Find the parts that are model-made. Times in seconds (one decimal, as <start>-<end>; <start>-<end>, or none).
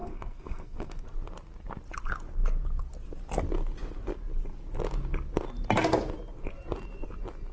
0.0-1.0